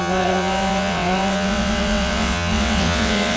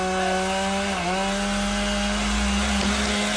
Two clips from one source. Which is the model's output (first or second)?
first